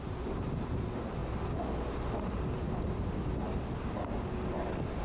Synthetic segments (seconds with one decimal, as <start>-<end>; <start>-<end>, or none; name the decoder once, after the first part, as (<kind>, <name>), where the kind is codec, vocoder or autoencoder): none